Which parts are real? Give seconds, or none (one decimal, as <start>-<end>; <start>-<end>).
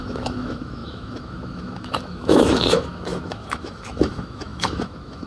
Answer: none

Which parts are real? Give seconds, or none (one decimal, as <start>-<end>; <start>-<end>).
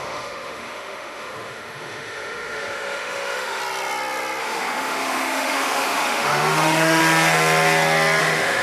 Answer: 3.6-4.4; 7.0-8.2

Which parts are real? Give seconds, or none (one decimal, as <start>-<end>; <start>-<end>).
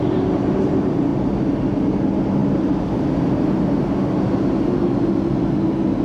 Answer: 0.0-6.0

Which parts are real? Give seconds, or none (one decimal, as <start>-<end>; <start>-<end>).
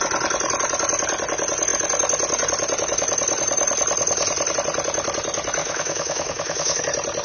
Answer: 0.0-5.6; 6.8-7.2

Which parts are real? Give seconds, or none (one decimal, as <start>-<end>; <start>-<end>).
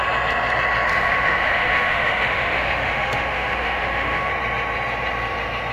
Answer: 0.0-0.9; 4.3-5.7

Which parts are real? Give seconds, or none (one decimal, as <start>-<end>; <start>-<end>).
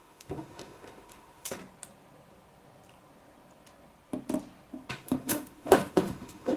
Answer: 1.6-4.9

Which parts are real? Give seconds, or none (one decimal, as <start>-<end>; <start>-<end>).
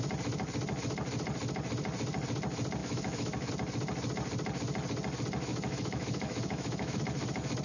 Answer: 0.0-2.8; 3.5-5.5; 7.0-7.6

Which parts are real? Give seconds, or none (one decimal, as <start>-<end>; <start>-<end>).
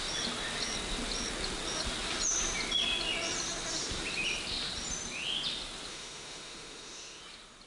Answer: 0.0-5.9; 7.2-7.7